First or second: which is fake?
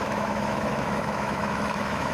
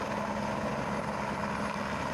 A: first